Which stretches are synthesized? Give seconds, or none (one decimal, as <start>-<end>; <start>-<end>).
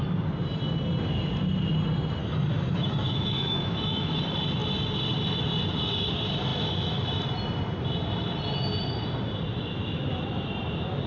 2.2-4.1